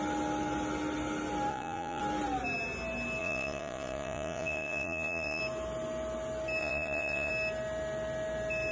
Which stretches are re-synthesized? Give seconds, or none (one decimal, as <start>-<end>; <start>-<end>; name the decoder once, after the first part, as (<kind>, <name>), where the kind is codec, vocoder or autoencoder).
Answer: 1.5-2.0 (vocoder, Vocos); 3.2-5.4; 6.6-7.3